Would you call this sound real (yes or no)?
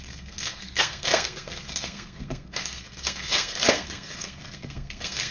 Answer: no